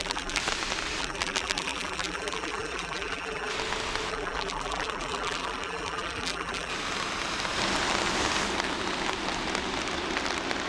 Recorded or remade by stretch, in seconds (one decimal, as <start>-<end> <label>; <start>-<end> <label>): 0.0-0.4 remade; 0.4-1.0 recorded; 1.0-3.5 remade; 3.5-4.1 recorded; 4.1-6.7 remade; 6.7-10.7 recorded